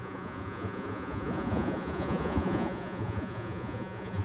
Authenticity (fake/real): fake